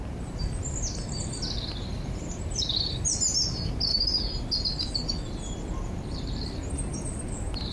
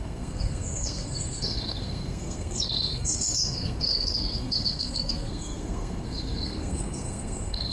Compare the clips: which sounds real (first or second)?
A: first